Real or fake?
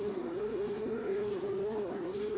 fake